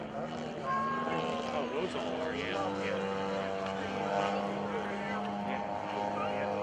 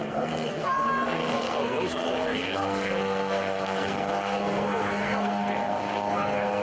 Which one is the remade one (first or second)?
second